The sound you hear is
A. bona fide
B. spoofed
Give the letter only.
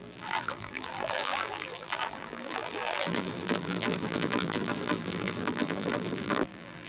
B